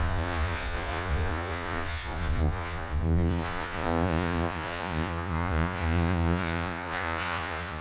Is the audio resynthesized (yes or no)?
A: yes